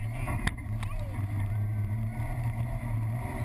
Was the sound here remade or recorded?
remade